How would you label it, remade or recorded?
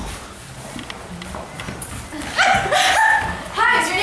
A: recorded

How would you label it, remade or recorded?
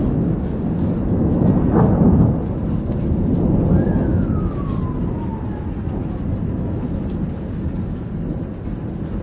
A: recorded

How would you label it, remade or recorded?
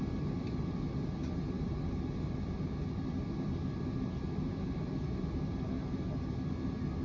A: recorded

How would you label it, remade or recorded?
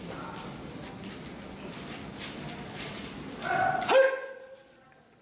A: recorded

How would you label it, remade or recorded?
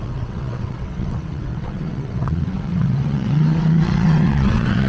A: remade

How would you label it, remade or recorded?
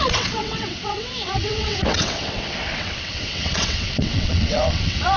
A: remade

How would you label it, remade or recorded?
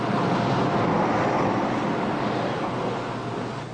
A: recorded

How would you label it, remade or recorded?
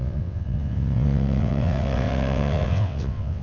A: remade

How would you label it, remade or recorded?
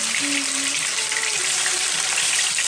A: recorded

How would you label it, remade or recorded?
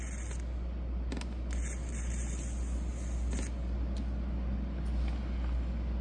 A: recorded